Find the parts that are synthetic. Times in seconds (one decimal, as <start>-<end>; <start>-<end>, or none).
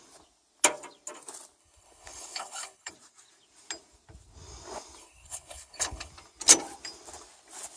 1.6-2.9; 5.0-6.1